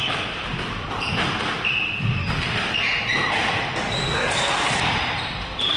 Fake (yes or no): no